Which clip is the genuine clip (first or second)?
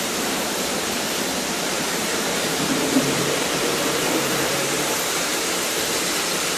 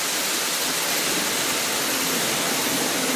second